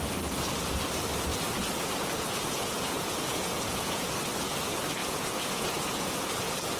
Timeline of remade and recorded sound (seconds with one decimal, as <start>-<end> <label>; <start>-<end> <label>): 0.0-1.3 recorded; 1.3-4.1 remade; 4.1-5.0 recorded; 5.0-6.1 remade; 6.1-6.8 recorded